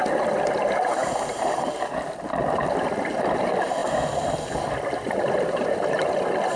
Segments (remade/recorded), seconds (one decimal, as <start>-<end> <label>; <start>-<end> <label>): 0.0-6.6 recorded

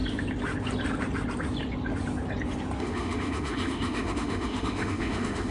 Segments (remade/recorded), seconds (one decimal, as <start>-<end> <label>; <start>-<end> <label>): 0.0-2.8 recorded; 2.8-5.5 remade

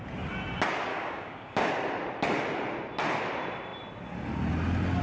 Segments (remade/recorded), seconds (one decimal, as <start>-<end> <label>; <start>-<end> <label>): 0.0-0.9 recorded; 0.9-1.7 remade; 1.7-5.0 recorded

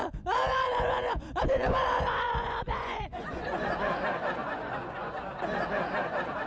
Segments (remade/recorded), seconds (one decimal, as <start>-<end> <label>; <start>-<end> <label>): 0.0-3.6 remade; 3.6-4.4 recorded; 4.4-5.1 remade; 5.1-6.5 recorded

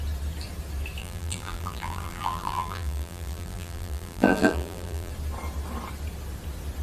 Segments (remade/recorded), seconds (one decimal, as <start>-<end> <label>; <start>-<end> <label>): 0.0-1.0 recorded; 1.0-5.1 remade; 5.1-6.8 recorded